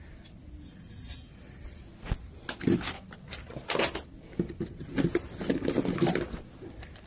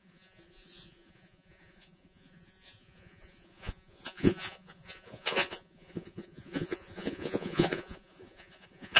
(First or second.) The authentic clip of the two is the first